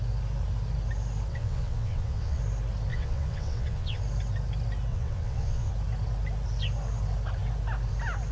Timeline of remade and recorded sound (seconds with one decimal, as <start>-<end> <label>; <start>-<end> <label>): 0.0-1.3 recorded; 1.3-2.4 remade; 2.4-2.9 recorded; 2.9-4.0 remade; 4.0-4.9 recorded; 4.9-5.7 remade; 5.7-8.3 recorded